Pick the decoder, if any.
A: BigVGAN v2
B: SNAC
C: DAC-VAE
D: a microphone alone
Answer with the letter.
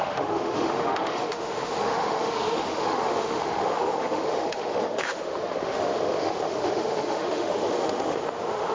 C